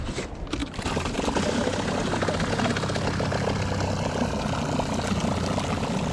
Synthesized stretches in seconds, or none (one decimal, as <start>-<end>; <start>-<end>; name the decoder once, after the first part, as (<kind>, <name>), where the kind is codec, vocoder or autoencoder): none